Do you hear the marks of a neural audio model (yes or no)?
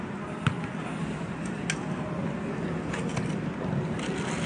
no